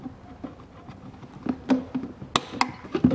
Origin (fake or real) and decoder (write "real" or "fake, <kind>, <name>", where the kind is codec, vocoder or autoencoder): real